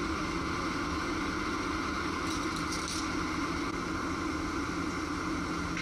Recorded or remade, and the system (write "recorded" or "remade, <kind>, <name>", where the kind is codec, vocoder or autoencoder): recorded